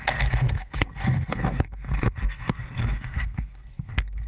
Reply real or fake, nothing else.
fake